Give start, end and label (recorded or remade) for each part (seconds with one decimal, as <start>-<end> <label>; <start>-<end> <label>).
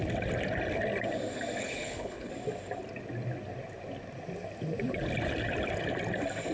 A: 0.0-1.6 recorded; 1.6-2.3 remade; 2.3-6.5 recorded